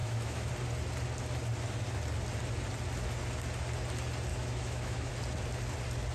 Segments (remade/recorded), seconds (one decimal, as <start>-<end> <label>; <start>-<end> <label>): 0.0-0.5 remade; 0.5-4.3 recorded; 4.3-5.1 remade; 5.1-6.1 recorded